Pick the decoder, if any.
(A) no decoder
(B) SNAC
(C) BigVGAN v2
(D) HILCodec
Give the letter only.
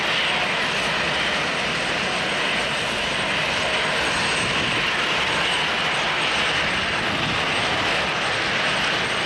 A